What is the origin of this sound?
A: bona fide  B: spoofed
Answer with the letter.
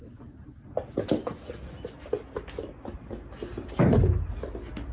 A